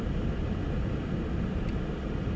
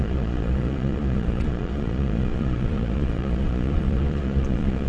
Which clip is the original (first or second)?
first